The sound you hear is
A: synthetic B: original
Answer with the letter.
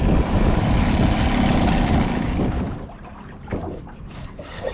B